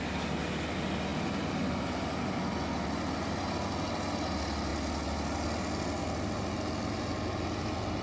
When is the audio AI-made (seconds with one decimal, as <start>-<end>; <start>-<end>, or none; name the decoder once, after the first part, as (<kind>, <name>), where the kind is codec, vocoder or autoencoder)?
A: none